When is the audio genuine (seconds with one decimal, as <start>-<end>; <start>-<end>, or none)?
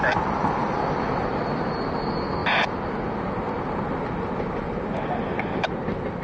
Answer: 0.0-6.2